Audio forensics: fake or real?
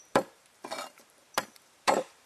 fake